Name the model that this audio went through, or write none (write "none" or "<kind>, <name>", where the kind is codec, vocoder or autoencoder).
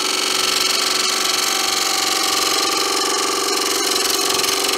none